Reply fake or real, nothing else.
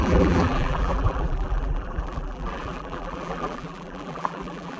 fake